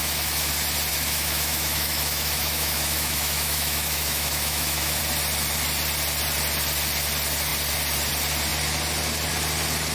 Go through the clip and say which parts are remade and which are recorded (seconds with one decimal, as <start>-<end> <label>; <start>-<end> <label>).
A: 0.0-0.5 remade; 0.5-0.9 recorded; 0.9-5.0 remade; 5.0-9.9 recorded